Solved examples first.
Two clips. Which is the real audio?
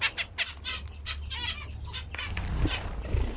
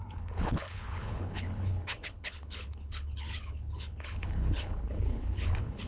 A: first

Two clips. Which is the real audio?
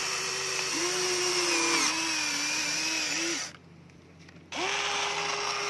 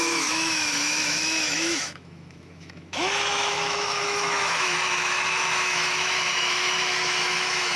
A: first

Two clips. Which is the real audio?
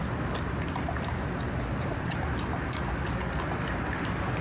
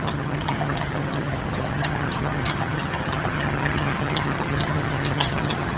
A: first